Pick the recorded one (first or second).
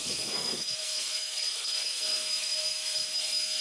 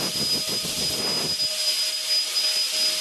second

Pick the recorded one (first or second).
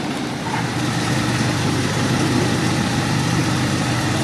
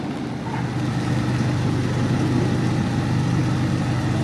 second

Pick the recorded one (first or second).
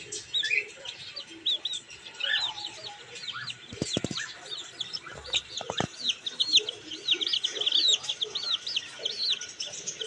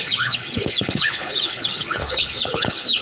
first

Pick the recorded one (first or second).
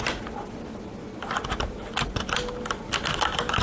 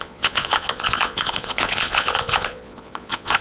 first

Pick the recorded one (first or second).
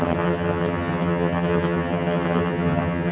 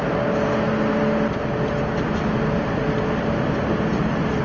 second